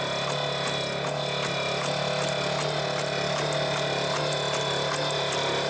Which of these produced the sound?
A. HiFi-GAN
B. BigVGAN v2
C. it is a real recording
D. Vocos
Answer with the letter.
C